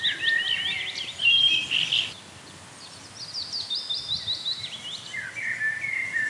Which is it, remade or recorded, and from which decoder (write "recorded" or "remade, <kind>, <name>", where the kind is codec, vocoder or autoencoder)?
recorded